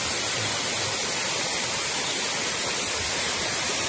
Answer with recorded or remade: recorded